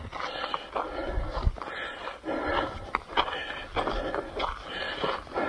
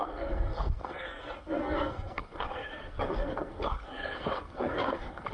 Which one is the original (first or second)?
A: first